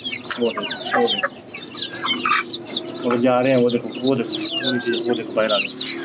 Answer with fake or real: real